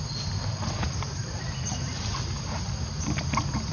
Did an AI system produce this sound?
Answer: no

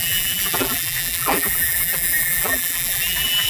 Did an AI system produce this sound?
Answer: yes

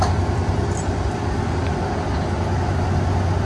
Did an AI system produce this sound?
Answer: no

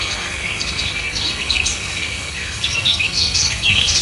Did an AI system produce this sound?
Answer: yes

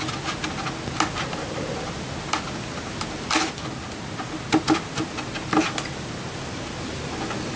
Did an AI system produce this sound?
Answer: no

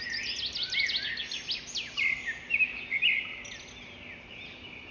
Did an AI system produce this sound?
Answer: no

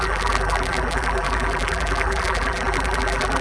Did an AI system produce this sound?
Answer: yes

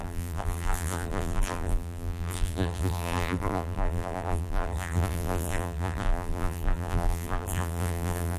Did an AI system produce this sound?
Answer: yes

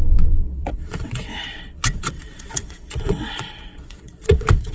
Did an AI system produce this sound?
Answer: yes